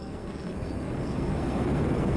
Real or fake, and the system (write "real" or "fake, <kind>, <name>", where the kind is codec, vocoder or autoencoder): fake, codec, SNAC